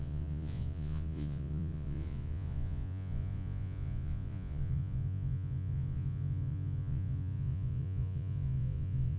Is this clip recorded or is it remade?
remade